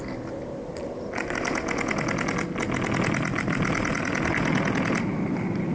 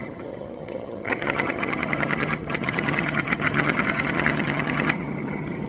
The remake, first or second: second